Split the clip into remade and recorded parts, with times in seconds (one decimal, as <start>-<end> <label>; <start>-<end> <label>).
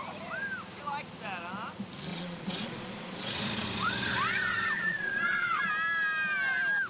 0.0-2.1 recorded; 2.1-5.7 remade; 5.7-6.9 recorded